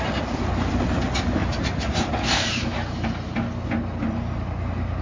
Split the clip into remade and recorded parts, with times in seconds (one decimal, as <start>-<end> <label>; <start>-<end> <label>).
0.0-1.4 recorded; 1.4-3.3 remade; 3.3-5.0 recorded